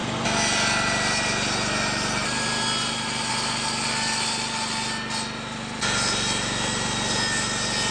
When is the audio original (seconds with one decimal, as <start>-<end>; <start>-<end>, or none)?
0.0-7.9